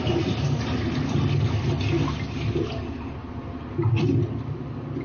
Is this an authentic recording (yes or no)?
yes